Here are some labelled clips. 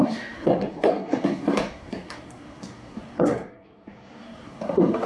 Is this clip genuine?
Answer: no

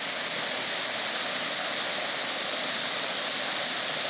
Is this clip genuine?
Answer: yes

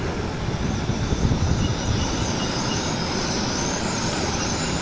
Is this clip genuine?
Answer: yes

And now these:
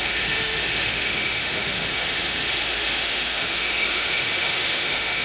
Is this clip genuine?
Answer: no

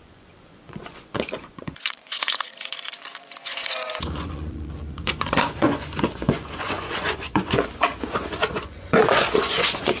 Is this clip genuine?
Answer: no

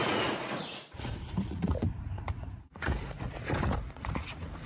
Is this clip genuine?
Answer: no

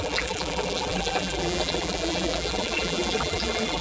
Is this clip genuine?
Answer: no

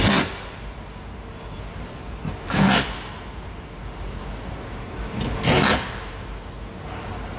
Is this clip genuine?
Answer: yes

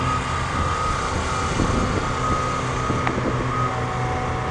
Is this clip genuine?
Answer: yes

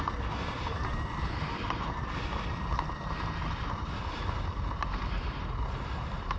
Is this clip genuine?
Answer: no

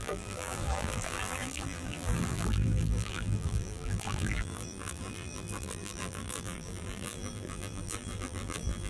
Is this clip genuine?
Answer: no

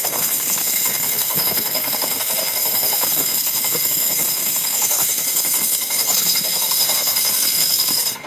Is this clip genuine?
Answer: no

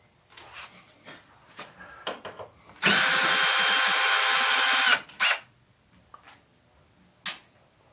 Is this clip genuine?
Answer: yes